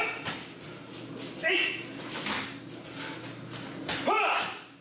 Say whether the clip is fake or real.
real